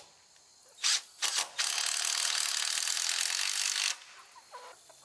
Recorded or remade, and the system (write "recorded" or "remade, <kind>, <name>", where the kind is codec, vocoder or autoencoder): recorded